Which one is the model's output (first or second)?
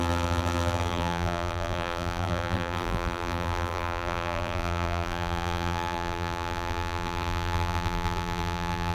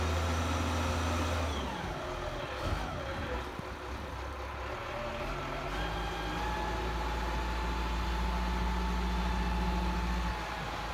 first